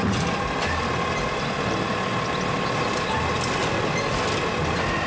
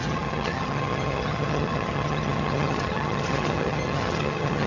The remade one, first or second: second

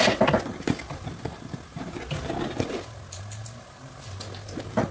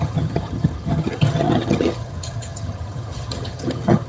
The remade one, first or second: second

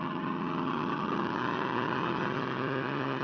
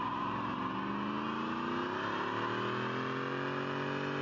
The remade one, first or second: first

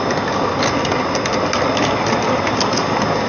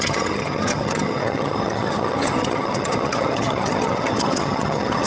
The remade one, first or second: second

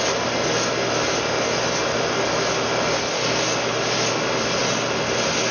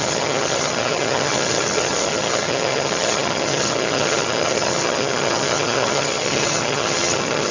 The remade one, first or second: second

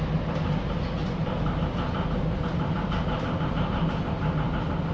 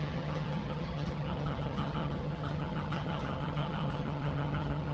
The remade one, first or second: second